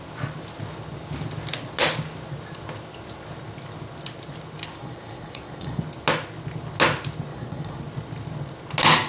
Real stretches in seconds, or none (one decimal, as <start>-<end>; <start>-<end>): 0.0-4.8; 5.8-7.3; 7.8-9.1